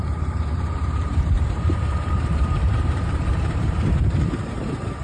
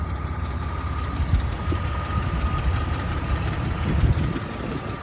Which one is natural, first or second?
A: second